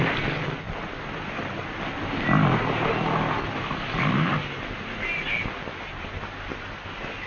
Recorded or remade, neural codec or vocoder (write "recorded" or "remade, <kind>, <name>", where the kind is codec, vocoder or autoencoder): recorded